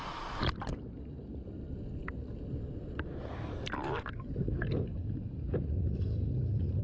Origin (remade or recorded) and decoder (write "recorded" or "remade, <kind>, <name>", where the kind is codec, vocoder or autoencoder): recorded